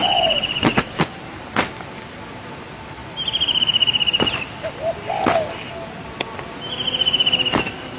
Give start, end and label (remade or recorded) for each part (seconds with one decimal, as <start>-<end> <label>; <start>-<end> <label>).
0.0-1.0 remade; 1.0-8.0 recorded